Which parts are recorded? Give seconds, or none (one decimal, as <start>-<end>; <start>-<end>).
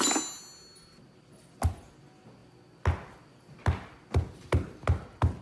0.0-5.4